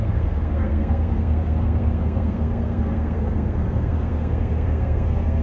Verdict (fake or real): fake